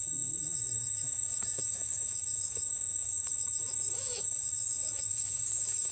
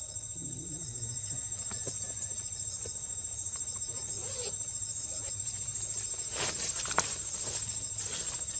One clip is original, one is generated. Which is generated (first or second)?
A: first